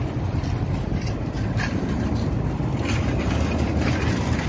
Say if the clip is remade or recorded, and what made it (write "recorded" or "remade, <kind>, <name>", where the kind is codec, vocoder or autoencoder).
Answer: recorded